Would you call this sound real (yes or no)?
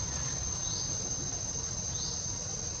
yes